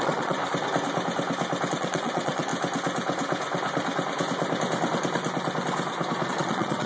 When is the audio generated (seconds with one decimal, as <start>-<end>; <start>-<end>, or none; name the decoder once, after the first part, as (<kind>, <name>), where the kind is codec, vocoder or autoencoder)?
0.0-0.4 (vocoder, Vocos); 1.7-2.5; 6.3-6.9